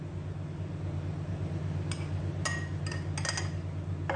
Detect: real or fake real